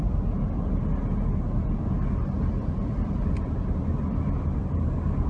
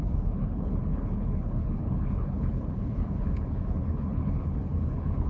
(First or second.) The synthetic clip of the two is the second